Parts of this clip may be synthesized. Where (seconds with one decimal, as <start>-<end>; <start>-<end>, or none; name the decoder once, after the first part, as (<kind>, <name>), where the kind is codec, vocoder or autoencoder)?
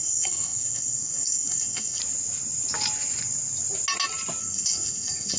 0.0-2.0 (codec, SNAC); 4.4-5.4